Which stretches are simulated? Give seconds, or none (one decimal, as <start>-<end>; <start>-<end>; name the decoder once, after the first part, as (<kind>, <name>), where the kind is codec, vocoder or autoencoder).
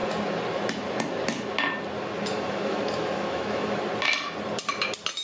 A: 2.3-3.8 (autoencoder, DAC-VAE)